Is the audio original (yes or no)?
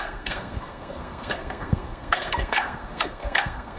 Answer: no